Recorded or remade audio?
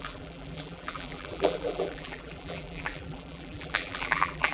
remade